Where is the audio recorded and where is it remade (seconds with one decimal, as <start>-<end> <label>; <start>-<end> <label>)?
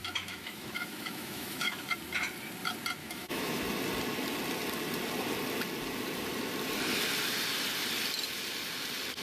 0.0-1.9 remade; 1.9-3.0 recorded; 3.0-3.6 remade; 3.6-9.2 recorded